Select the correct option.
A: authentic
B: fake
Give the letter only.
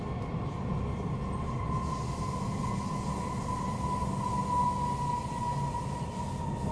A